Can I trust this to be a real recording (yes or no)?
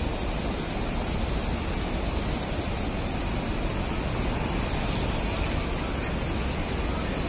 yes